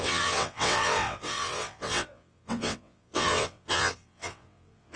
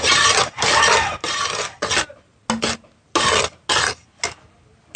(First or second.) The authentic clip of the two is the second